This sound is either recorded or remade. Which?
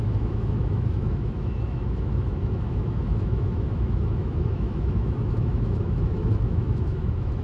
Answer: remade